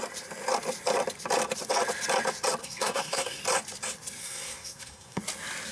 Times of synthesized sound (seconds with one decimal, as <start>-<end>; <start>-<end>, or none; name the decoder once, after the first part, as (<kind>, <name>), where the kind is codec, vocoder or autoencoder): 2.6-3.4 (codec, SNAC); 4.2-5.2